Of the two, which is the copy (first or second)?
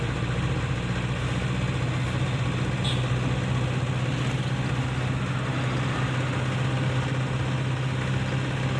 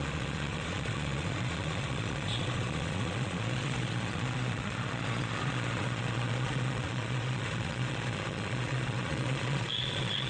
second